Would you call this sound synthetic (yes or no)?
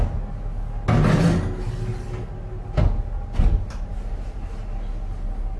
no